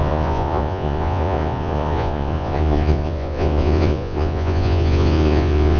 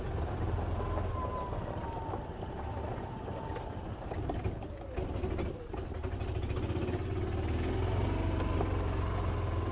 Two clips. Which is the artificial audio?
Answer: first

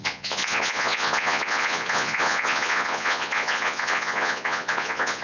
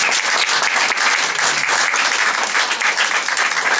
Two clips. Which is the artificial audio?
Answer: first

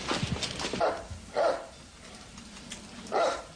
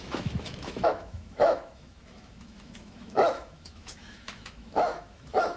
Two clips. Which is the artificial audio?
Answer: second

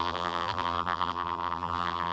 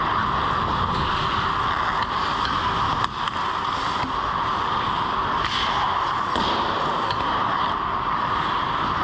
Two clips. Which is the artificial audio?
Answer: first